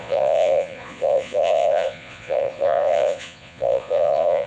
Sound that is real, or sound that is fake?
fake